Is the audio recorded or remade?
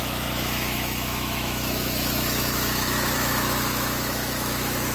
remade